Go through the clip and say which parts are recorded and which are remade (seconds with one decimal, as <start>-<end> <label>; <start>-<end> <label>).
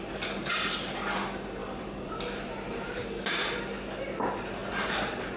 0.0-1.6 recorded; 1.6-2.1 remade; 2.1-4.6 recorded; 4.6-5.4 remade